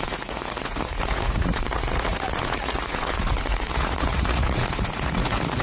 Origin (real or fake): fake